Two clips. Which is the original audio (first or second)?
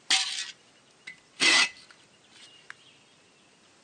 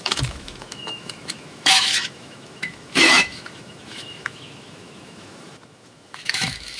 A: first